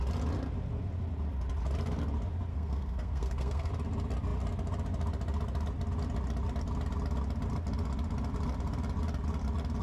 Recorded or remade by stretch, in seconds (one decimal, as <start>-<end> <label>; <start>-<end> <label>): 0.0-2.5 recorded; 2.5-3.7 remade; 3.7-9.8 recorded